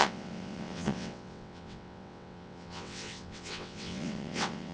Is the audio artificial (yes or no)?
yes